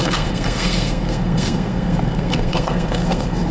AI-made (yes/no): yes